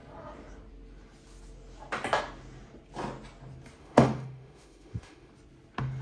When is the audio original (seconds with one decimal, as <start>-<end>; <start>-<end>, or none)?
0.0-3.8; 5.3-6.0